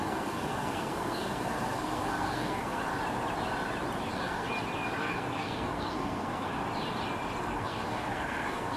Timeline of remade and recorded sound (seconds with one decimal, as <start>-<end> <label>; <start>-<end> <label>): 0.0-2.9 remade; 2.9-4.0 recorded; 4.0-4.5 remade; 4.5-5.0 recorded; 5.0-6.6 remade; 6.6-7.4 recorded; 7.4-8.8 remade